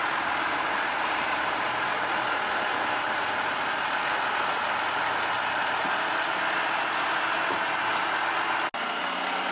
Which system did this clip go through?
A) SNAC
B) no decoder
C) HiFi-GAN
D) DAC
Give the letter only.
B